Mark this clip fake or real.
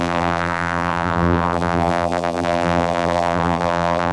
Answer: fake